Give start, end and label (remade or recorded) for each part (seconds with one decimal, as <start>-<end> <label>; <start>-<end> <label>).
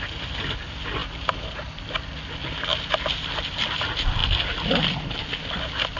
0.0-6.0 recorded